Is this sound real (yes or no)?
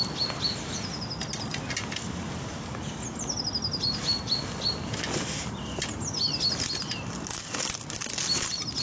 yes